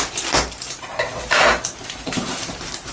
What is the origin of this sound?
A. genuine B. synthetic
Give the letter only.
B